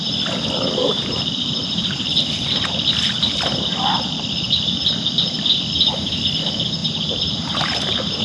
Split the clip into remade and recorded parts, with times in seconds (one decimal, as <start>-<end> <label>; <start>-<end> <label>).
0.0-0.8 recorded; 0.8-2.7 remade; 2.7-6.8 recorded; 6.8-8.2 remade